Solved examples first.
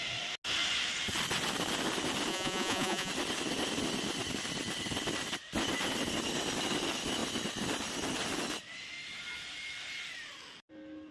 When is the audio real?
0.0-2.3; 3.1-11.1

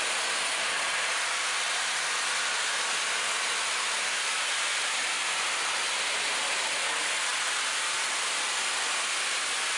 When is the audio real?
0.0-9.8

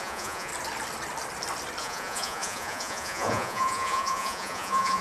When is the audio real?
0.5-1.8

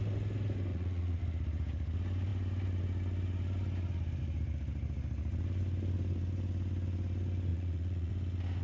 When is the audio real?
0.0-0.7; 1.2-7.5; 8.1-8.6